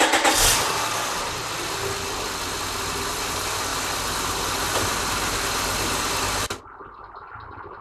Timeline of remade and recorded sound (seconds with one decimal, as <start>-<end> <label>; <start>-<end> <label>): 0.0-7.8 recorded